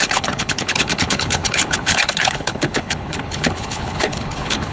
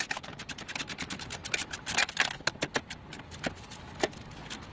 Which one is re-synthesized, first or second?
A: first